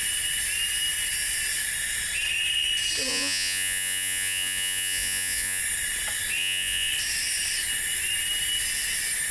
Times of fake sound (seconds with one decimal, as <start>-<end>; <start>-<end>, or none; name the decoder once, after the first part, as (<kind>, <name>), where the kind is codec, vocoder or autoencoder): 3.1-5.6 (vocoder, Vocos); 6.4-6.9